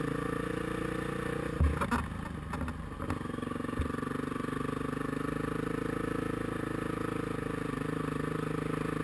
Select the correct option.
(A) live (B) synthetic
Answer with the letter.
A